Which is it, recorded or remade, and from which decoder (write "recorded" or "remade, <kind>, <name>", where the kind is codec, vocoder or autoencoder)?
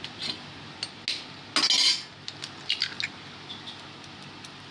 recorded